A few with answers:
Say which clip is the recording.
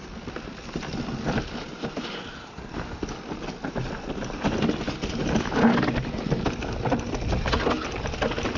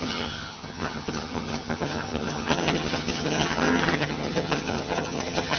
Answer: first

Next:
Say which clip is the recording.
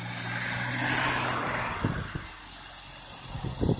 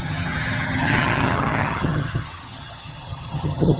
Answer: first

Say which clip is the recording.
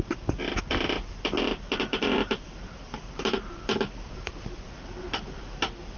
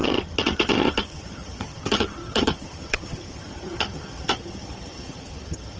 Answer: first